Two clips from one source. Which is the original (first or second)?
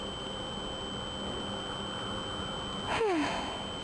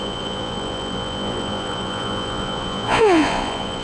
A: first